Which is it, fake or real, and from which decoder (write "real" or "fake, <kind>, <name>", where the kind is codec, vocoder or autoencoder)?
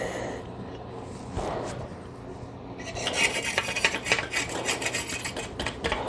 real